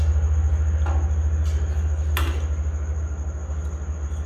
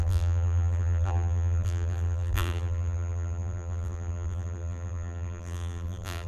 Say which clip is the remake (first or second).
second